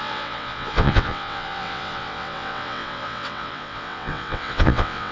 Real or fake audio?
fake